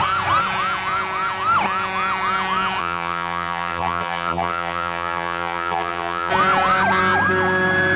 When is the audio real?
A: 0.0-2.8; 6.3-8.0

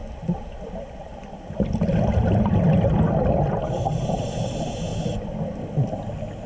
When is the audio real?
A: 3.9-6.5

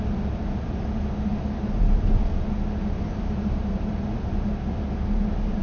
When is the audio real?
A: 0.0-5.6